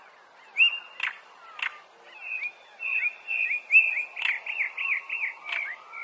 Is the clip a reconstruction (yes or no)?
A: no